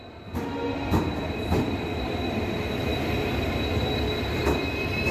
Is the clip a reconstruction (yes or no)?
no